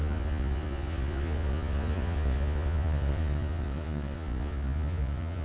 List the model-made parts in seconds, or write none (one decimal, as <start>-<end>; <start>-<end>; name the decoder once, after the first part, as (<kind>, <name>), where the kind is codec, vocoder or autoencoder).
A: 0.0-5.4 (vocoder, Vocos)